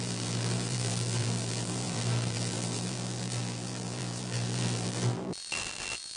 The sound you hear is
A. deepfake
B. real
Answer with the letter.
A